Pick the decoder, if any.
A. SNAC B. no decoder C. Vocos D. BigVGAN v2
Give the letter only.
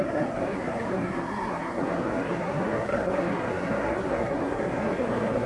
A